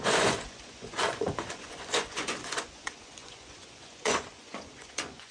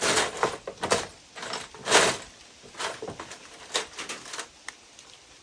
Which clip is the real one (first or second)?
second